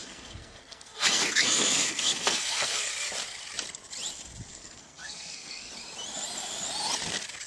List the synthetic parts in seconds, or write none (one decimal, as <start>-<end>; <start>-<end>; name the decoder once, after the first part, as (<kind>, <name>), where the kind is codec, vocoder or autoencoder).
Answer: 0.0-2.9 (codec, SNAC); 4.5-5.7